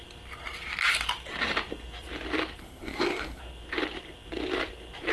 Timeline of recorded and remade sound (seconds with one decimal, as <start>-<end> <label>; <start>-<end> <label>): 0.0-2.6 recorded; 2.6-3.4 remade; 3.4-5.1 recorded